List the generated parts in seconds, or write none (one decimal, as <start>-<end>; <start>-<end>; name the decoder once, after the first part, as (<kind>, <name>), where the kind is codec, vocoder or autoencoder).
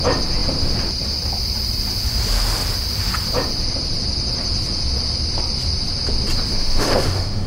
6.5-7.5 (autoencoder, DAC-VAE)